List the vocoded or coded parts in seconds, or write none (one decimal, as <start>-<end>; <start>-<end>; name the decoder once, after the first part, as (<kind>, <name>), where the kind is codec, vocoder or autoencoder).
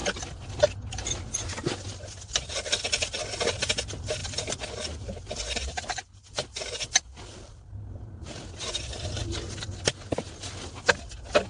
4.2-9.4 (vocoder, BigVGAN v2)